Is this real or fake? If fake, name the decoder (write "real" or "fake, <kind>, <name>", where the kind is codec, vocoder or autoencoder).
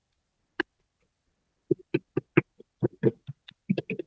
real